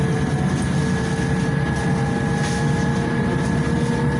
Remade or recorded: recorded